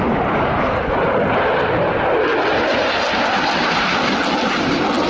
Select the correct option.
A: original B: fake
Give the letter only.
A